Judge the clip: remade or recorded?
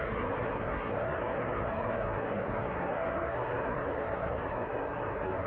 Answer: remade